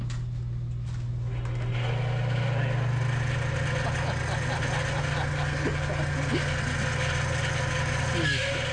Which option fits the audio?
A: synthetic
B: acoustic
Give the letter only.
B